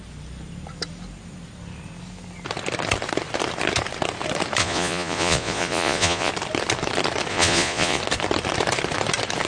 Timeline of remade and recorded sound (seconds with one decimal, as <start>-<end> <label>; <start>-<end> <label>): 0.0-4.6 recorded; 4.6-6.3 remade; 6.3-7.3 recorded; 7.3-8.0 remade; 8.0-9.5 recorded